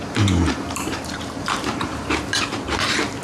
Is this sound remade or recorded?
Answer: remade